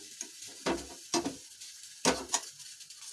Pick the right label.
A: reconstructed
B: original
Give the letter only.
B